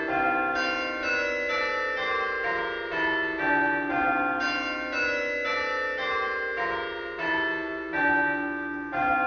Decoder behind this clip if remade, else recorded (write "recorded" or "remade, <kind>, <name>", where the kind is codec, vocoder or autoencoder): recorded